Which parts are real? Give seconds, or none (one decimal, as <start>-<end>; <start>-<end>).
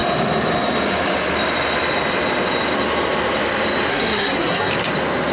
0.0-3.9; 4.7-5.3